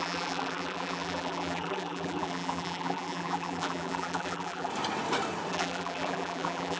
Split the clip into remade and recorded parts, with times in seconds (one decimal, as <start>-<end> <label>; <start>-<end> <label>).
0.0-4.7 remade; 4.7-5.5 recorded; 5.5-6.8 remade